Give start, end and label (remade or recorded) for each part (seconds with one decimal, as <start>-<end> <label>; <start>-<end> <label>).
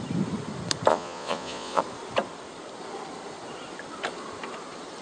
0.0-0.9 recorded; 0.9-1.8 remade; 1.8-5.0 recorded